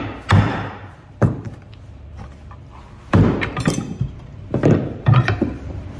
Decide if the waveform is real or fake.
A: fake